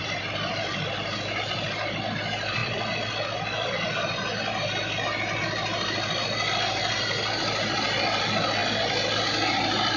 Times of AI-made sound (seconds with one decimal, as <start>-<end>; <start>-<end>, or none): 0.0-2.6; 7.0-8.6